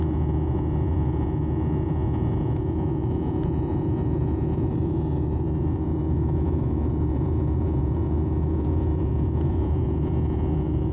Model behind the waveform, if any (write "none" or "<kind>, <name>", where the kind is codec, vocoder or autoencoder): vocoder, Vocos